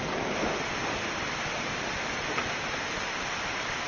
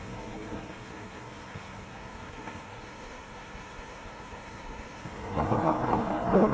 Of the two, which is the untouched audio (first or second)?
first